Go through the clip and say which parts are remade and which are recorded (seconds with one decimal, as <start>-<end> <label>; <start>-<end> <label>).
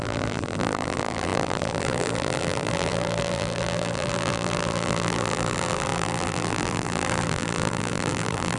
0.0-8.6 remade